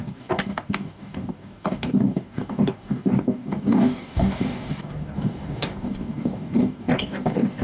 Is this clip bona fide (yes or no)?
no